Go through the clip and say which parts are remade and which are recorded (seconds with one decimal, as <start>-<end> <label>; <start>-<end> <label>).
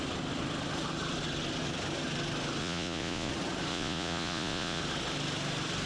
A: 0.0-2.6 recorded; 2.6-3.3 remade; 3.3-3.7 recorded; 3.7-4.8 remade; 4.8-5.9 recorded